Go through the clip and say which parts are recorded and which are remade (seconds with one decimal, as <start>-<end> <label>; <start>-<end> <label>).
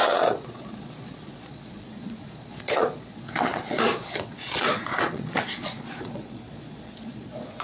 0.0-7.6 remade